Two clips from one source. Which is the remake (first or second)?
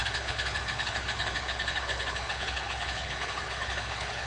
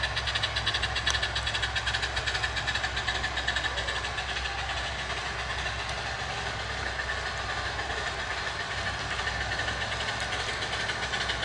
first